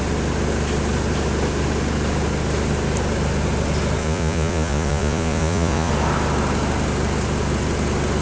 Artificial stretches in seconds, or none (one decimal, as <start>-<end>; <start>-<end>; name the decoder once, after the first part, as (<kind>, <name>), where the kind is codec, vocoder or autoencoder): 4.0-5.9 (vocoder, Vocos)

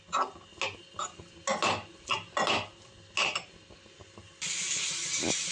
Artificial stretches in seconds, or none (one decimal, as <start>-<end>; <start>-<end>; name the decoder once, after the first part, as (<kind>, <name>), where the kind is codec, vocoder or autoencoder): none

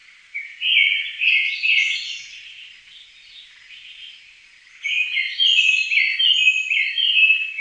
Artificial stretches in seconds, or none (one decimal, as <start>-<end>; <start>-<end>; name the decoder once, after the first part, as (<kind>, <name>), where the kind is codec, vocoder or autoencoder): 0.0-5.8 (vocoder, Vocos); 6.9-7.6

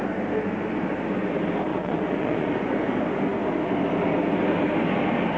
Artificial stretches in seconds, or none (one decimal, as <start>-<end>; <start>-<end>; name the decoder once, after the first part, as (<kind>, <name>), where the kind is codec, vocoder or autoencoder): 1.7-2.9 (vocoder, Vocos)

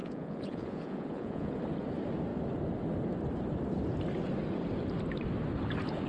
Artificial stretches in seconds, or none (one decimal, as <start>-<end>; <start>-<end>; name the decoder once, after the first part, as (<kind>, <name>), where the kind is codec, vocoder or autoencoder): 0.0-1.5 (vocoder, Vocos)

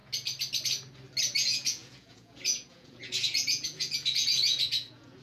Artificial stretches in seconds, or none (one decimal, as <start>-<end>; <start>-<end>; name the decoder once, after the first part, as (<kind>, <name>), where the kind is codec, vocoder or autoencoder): 1.2-5.2 (vocoder, Vocos)